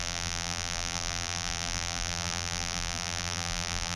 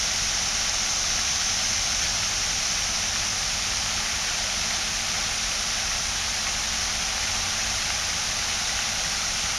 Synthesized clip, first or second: first